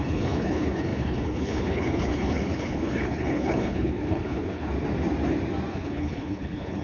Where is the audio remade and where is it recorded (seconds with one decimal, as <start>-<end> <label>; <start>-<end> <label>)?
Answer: 0.0-4.7 remade; 4.7-5.7 recorded; 5.7-6.8 remade